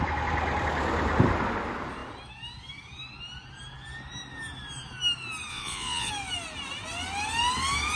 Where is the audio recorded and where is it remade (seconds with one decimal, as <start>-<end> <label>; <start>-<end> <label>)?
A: 0.0-5.5 recorded; 5.5-6.1 remade; 6.1-8.0 recorded